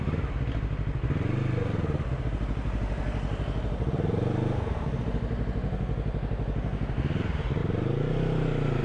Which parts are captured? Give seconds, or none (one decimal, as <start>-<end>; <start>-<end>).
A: 0.0-7.6